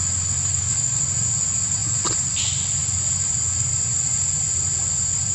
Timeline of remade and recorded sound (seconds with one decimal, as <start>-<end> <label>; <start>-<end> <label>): 0.0-0.5 recorded; 0.5-1.0 remade; 1.0-5.3 recorded